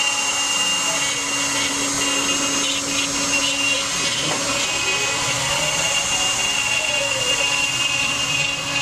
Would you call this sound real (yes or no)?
yes